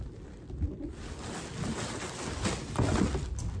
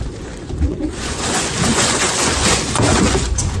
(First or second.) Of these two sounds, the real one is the first